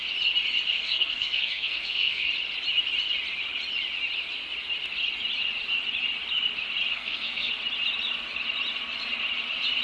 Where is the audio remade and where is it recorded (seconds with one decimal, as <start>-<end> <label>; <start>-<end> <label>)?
0.0-0.7 recorded; 0.7-2.3 remade; 2.3-6.9 recorded; 6.9-7.5 remade; 7.5-9.8 recorded

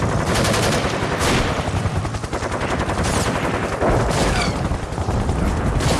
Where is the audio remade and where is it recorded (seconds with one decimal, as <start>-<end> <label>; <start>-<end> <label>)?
0.0-6.0 recorded

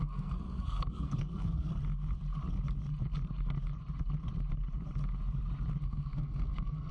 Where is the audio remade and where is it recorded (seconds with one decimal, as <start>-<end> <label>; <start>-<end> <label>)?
0.0-1.7 remade; 1.7-5.8 recorded; 5.8-6.9 remade

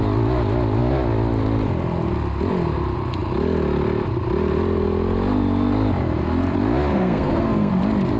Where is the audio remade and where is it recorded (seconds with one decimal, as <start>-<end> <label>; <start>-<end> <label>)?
0.0-6.9 recorded; 6.9-7.7 remade; 7.7-8.2 recorded

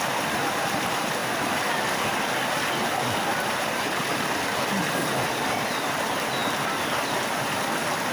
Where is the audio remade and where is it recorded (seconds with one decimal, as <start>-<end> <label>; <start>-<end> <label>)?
0.0-8.1 recorded